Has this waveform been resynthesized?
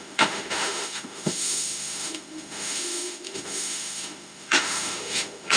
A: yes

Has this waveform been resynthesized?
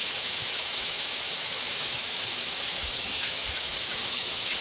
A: yes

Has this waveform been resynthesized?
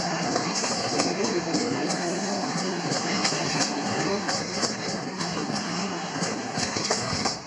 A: yes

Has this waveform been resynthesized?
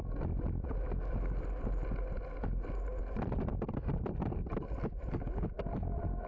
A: no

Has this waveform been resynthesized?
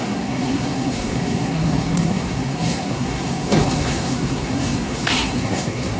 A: yes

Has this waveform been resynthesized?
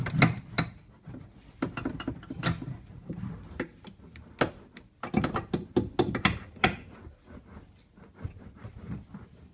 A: no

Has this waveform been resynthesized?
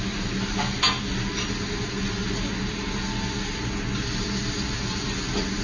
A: no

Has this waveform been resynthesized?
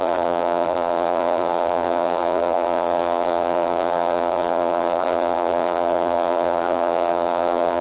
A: yes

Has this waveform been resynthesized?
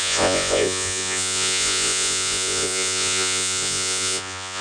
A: yes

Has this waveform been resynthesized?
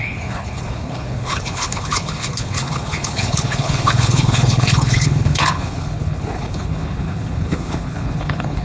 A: yes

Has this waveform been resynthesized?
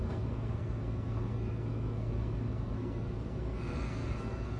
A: yes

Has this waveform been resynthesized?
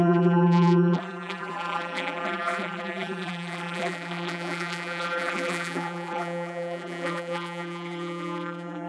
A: yes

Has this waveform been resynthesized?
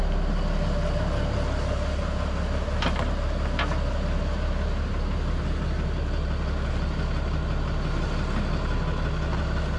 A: no